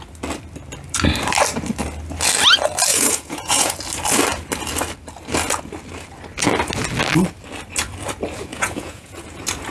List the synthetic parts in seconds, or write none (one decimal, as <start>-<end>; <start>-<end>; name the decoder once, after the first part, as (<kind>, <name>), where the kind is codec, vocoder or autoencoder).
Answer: 2.9-3.7 (vocoder, Vocos); 8.5-9.2